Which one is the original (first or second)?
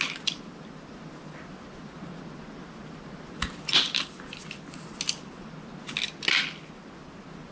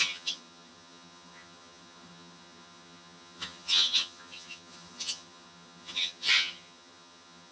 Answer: first